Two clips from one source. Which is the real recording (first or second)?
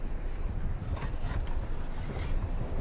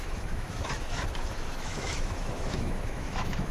first